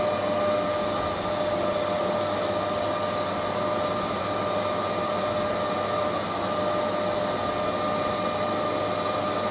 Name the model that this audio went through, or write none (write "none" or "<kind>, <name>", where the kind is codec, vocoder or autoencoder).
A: none